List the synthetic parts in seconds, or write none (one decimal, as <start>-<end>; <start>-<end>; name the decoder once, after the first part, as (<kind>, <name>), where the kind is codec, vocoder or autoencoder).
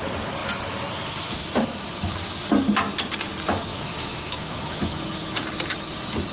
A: 3.7-5.4 (autoencoder, DAC-VAE)